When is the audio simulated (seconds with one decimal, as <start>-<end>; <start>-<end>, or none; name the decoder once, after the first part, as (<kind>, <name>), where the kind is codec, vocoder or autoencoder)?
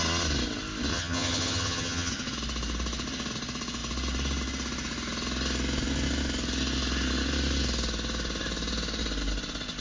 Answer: 0.9-2.1 (vocoder, HiFi-GAN)